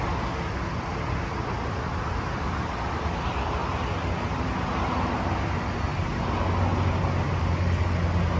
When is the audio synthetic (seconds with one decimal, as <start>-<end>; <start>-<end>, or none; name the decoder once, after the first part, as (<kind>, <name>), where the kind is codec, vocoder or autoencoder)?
none